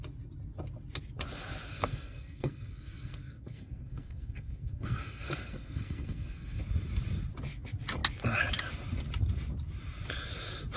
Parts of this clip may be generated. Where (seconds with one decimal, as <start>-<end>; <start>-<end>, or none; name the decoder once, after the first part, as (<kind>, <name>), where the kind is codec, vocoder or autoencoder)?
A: 1.7-6.6 (codec, SNAC)